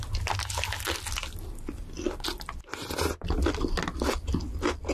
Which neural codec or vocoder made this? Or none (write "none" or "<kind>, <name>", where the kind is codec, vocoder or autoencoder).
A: none